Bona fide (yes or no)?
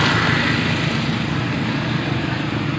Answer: yes